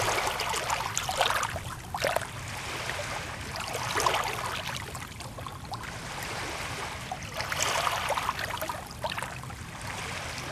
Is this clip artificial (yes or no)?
no